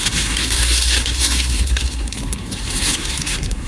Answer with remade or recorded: remade